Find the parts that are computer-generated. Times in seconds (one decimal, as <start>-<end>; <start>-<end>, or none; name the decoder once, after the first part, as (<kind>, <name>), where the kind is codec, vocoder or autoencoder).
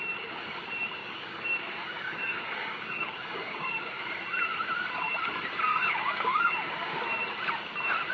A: 1.0-4.0 (codec, DAC); 5.7-7.0